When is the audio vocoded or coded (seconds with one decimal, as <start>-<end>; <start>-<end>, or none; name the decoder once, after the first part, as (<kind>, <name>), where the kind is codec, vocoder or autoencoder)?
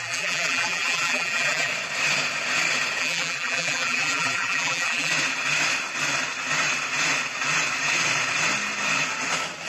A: 0.0-1.7 (vocoder, BigVGAN v2); 3.0-5.1